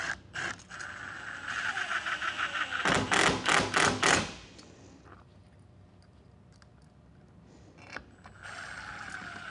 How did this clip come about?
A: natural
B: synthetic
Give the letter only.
A